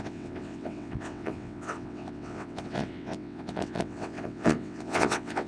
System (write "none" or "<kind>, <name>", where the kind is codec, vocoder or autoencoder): vocoder, WaveNeXt